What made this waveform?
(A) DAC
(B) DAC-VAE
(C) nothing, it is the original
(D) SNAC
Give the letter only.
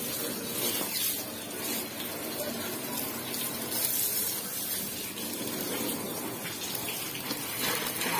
C